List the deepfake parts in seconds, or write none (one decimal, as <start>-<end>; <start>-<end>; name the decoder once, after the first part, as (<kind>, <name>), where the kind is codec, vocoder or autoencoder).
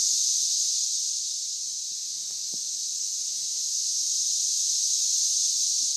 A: 1.1-6.0 (vocoder, Vocos)